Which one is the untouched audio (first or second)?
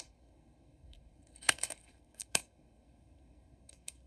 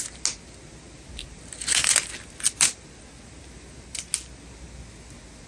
second